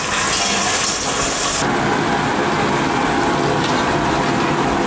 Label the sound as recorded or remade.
recorded